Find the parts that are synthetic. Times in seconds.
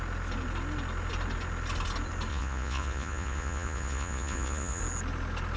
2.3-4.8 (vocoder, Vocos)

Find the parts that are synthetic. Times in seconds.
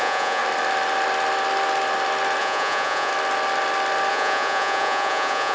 0.0-0.4 (vocoder, Vocos); 2.4-3.1; 4.1-5.5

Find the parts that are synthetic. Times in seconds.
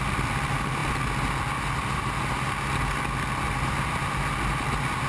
none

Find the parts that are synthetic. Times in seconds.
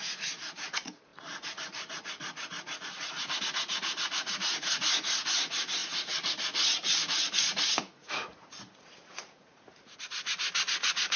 0.0-11.2 (vocoder, Vocos)